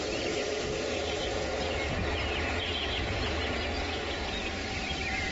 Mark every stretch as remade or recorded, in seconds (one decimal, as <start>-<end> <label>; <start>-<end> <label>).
0.0-1.3 recorded; 1.3-4.5 remade; 4.5-5.3 recorded